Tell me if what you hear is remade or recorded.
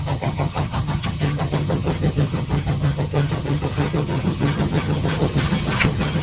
remade